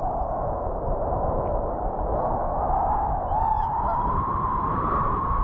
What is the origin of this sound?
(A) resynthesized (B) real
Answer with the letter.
B